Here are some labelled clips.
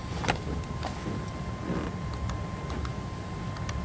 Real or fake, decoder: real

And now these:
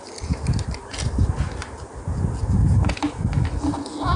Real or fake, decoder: real